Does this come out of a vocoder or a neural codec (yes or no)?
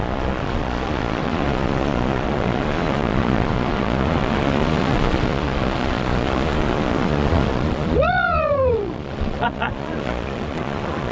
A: yes